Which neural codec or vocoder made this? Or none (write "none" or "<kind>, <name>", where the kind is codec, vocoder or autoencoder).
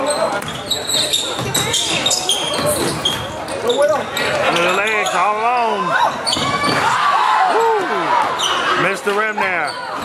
none